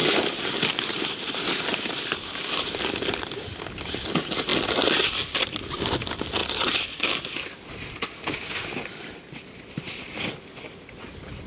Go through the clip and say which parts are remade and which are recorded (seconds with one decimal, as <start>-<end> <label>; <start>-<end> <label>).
0.0-11.5 recorded